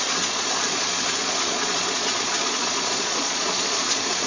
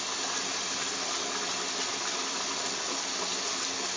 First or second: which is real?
second